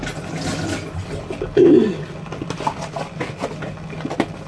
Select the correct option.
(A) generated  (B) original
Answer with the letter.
B